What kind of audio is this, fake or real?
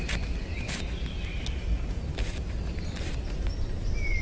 real